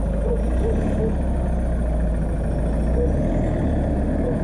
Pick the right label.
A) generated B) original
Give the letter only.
B